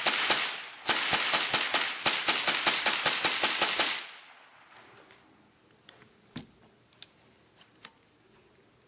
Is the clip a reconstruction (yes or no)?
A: no